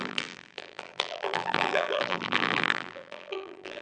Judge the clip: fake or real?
fake